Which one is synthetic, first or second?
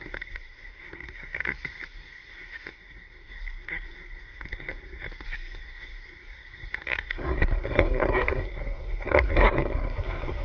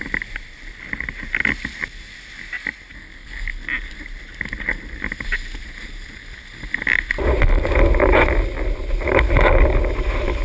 first